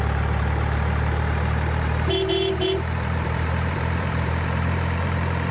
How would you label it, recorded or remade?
remade